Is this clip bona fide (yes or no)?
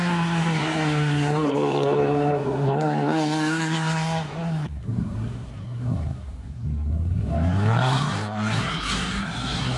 no